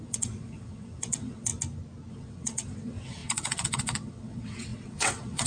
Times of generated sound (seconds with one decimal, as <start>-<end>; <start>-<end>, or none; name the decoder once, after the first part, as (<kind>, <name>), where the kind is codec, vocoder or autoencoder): 0.0-1.5 (vocoder, WaveNeXt); 2.1-5.5